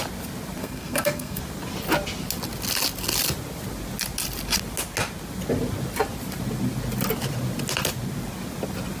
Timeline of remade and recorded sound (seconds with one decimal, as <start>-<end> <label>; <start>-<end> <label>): 0.0-0.6 recorded; 0.6-1.4 remade; 1.4-9.0 recorded